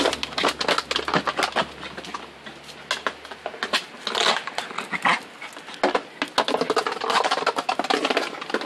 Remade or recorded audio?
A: recorded